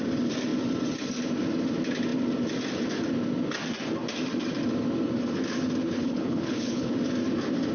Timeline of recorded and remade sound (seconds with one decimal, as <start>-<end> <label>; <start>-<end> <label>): 0.0-5.8 recorded; 5.8-6.9 remade; 6.9-7.7 recorded